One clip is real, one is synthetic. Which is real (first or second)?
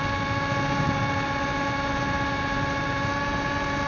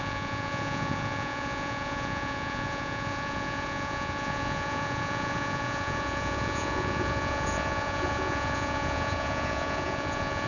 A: first